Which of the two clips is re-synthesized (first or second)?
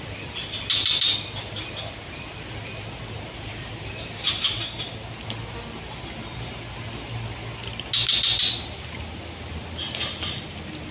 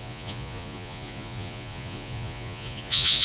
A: second